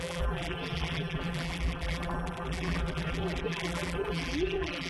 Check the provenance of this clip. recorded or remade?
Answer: remade